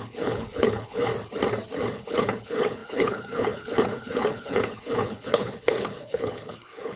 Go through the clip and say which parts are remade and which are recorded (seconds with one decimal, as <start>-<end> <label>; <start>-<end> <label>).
0.0-1.1 remade; 1.1-1.9 recorded; 1.9-7.0 remade